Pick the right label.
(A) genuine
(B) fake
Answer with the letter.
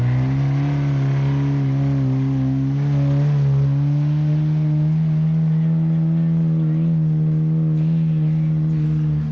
A